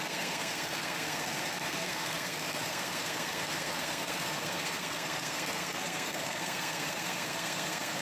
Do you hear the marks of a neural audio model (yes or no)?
yes